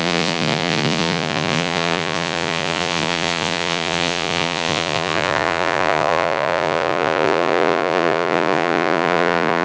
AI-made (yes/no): yes